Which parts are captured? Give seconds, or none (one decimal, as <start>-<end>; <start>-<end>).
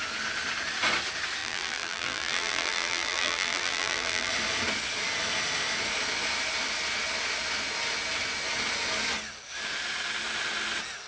0.0-1.4; 4.3-11.1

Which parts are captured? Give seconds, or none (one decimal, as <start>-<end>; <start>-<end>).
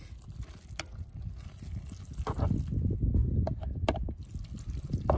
0.0-5.2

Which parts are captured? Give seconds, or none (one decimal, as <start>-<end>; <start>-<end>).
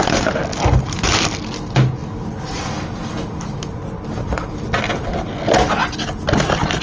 0.0-6.8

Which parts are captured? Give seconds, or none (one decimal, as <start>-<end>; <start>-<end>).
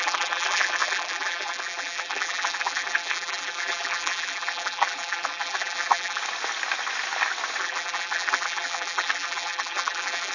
6.2-7.6